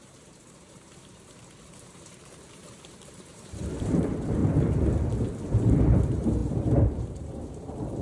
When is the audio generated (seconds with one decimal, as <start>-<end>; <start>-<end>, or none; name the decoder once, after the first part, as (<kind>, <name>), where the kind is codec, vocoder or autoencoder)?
0.0-4.4 (vocoder, BigVGAN v2); 5.3-8.0